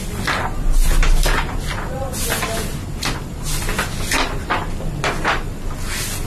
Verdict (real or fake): real